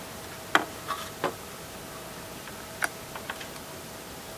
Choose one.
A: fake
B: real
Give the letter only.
B